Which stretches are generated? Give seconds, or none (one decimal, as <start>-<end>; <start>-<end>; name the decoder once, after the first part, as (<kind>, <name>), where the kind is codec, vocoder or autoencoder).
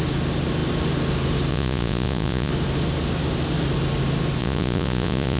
1.5-2.5 (vocoder, Vocos); 4.4-5.4